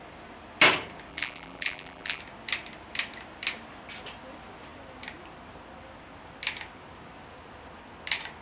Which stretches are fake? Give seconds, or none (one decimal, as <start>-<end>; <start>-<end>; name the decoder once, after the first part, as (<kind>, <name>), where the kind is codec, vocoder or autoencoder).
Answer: 1.1-2.2 (vocoder, BigVGAN v2)